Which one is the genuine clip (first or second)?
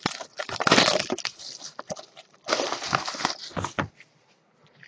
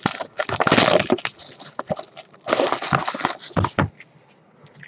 second